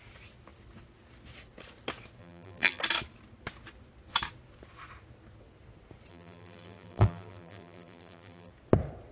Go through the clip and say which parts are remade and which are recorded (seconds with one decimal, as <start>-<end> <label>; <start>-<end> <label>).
0.0-2.2 recorded; 2.2-2.8 remade; 2.8-6.1 recorded; 6.1-8.5 remade; 8.5-9.1 recorded